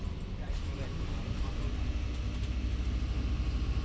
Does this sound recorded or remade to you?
recorded